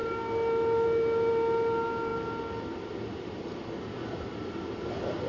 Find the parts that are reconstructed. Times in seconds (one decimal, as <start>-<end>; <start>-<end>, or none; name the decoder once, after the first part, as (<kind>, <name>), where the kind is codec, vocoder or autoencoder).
none